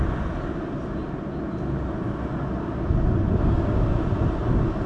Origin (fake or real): real